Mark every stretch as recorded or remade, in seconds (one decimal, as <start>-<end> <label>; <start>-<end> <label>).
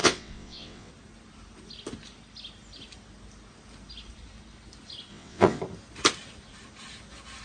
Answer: 0.0-0.9 remade; 0.9-5.1 recorded; 5.1-5.6 remade; 5.6-7.4 recorded